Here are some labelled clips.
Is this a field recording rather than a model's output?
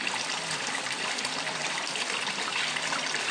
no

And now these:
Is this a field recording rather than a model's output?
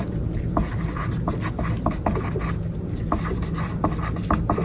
yes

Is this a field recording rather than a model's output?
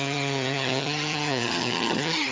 no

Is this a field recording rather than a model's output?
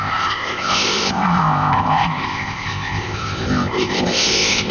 no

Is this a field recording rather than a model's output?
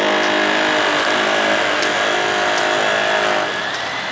yes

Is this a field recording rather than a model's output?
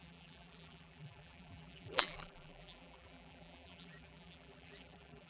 no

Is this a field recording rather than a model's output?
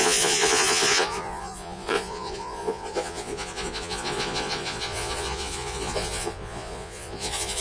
no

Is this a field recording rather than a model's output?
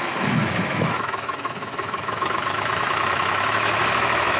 no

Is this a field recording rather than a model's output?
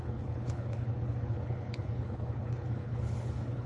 no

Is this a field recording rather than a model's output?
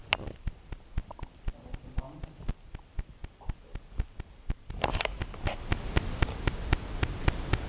yes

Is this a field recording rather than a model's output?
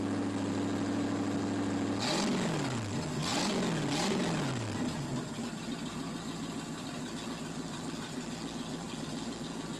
yes